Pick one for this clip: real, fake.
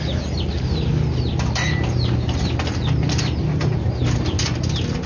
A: real